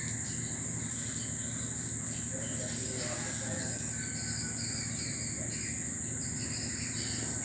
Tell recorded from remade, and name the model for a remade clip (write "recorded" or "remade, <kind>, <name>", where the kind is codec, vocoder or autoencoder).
recorded